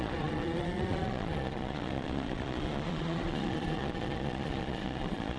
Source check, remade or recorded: remade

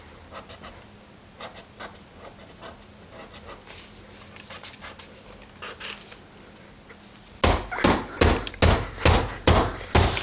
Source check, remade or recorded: recorded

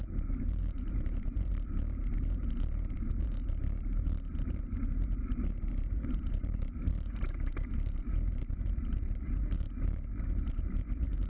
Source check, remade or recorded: remade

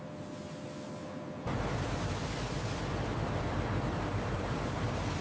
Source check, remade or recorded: recorded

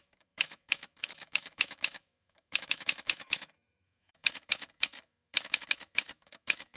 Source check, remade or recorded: remade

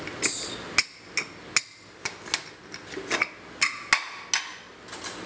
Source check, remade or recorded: recorded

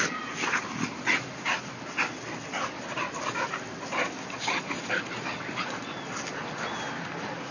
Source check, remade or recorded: recorded